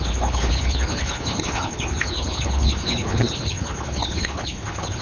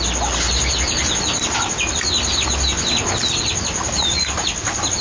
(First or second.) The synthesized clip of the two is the first